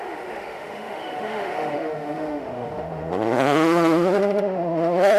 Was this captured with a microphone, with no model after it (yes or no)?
no